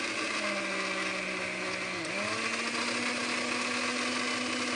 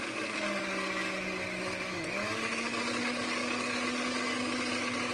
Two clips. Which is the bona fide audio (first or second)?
first